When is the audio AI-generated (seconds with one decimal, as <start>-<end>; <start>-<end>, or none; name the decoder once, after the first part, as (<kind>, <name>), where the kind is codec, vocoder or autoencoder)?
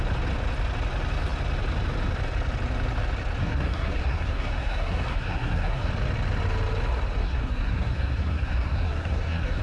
3.4-5.9 (codec, SNAC); 7.2-9.6